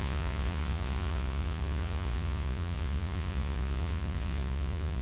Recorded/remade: remade